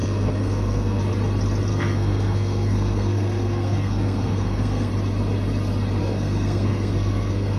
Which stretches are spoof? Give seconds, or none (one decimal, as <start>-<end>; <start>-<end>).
0.0-1.0; 1.7-4.9; 6.0-7.6